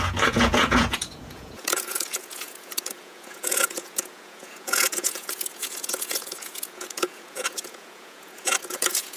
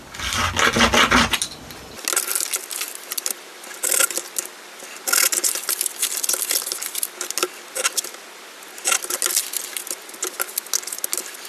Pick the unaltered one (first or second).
second